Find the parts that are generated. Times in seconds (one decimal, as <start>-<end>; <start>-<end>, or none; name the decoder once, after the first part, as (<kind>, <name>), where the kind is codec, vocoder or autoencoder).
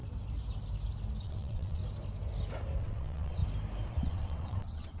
1.2-1.8 (vocoder, WaveNeXt); 2.8-3.4; 3.9-5.0